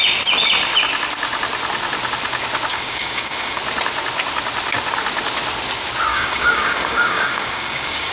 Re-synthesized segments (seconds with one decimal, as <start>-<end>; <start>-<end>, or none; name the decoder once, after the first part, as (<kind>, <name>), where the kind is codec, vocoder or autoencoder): 2.7-3.6 (codec, DAC); 6.1-8.1